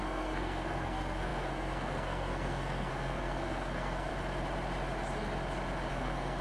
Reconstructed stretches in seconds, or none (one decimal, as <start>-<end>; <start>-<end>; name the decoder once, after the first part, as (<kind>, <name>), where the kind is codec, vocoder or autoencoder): 0.0-4.1 (codec, SNAC); 5.9-6.4